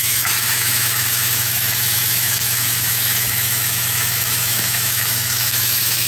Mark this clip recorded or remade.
remade